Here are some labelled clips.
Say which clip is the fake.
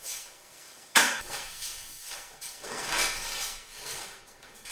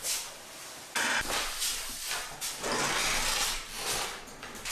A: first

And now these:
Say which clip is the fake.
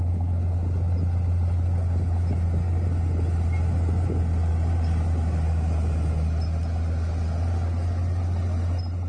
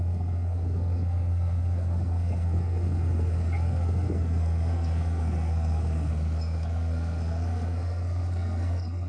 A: second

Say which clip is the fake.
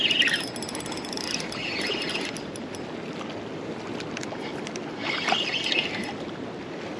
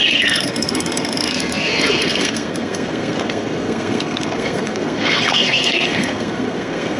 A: second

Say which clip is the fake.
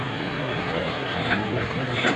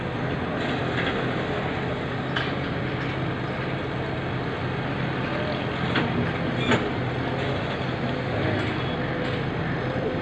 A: first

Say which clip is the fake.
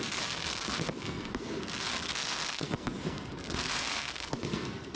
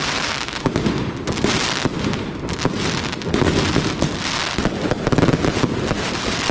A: first